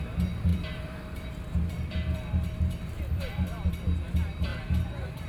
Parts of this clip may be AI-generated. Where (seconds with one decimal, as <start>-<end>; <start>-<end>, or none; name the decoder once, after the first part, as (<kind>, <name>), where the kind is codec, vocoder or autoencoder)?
0.0-5.3 (vocoder, BigVGAN v2)